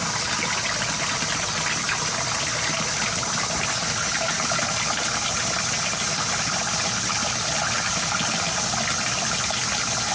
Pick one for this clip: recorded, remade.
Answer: recorded